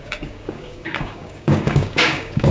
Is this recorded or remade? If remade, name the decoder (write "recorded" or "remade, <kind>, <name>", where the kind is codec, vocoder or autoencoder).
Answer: remade, codec, DAC